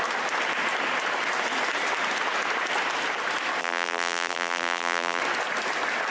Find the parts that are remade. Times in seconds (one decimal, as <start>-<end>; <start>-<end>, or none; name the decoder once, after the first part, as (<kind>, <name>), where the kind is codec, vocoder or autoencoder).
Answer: 3.6-5.2 (vocoder, BigVGAN v2)